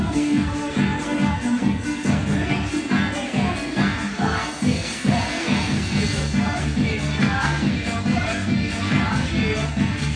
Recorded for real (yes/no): no